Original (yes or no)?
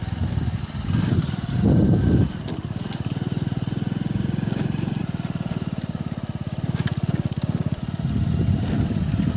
yes